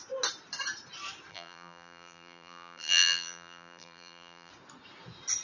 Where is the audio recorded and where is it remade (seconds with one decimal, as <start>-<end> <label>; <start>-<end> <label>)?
0.0-1.3 recorded; 1.3-4.5 remade; 4.5-5.4 recorded